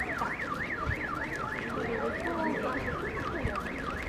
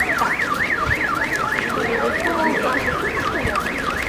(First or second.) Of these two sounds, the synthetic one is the second